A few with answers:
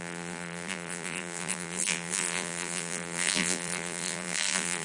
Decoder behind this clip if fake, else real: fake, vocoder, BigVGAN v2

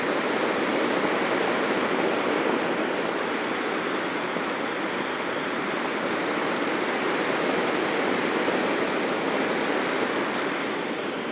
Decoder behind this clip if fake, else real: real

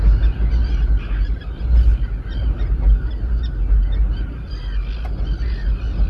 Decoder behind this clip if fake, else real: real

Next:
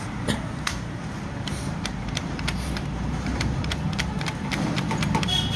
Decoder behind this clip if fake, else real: fake, vocoder, BigVGAN v2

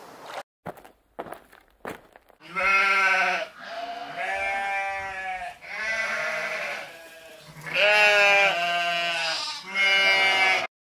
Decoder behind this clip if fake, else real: real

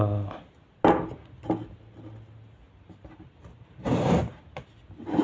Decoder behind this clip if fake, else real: real